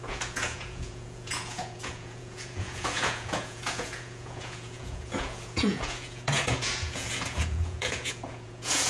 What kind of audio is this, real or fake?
fake